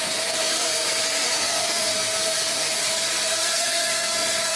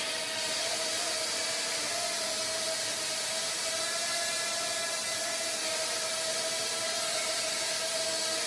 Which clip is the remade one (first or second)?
first